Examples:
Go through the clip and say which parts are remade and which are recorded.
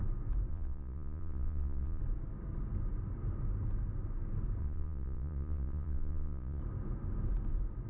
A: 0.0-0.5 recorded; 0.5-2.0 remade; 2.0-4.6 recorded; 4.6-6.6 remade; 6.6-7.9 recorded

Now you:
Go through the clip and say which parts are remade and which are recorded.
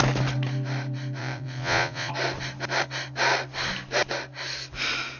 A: 0.0-1.2 recorded; 1.2-2.1 remade; 2.1-5.2 recorded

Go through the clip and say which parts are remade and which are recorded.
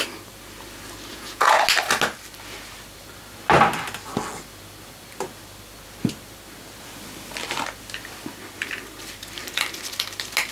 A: 0.0-1.1 recorded; 1.1-1.6 remade; 1.6-10.5 recorded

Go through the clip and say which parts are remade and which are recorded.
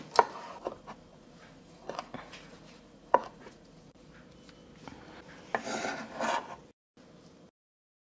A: 0.0-1.1 recorded; 1.1-4.1 remade; 4.1-8.1 recorded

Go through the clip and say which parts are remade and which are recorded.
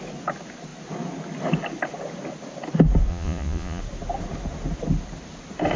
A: 0.0-3.1 recorded; 3.1-3.8 remade; 3.8-5.8 recorded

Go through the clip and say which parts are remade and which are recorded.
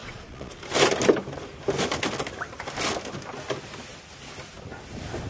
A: 0.0-0.6 remade; 0.6-5.3 recorded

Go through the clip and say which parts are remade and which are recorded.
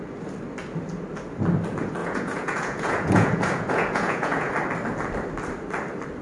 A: 0.0-2.0 recorded; 2.0-4.5 remade; 4.5-6.2 recorded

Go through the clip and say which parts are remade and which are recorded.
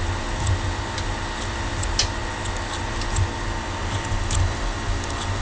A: 0.0-5.4 recorded